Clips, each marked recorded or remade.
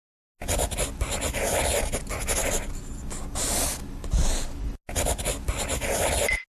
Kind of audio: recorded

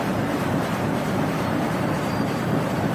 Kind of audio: remade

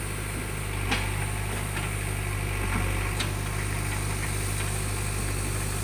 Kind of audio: recorded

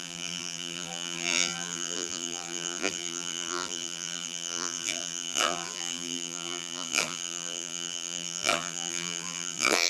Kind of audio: remade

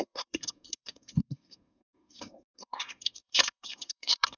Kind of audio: remade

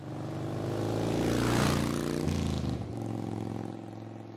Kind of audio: recorded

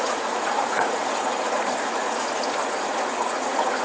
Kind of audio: remade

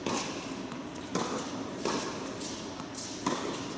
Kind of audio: recorded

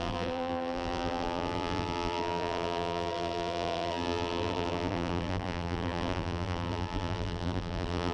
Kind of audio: remade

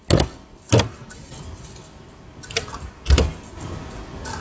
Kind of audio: recorded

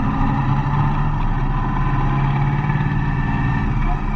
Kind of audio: recorded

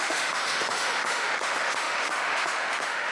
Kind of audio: remade